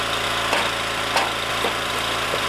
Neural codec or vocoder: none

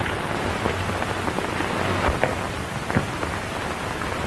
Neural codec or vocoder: none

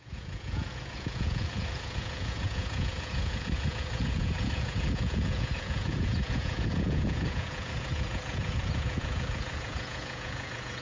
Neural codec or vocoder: vocoder, Vocos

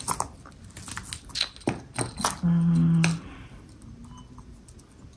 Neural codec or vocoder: none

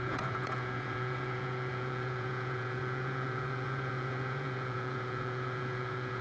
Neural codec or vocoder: vocoder, Vocos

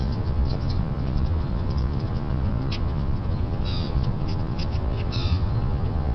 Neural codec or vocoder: vocoder, Vocos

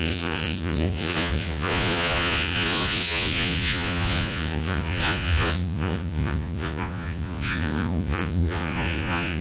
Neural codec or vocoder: vocoder, Vocos